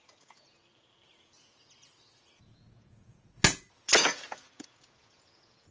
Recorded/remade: remade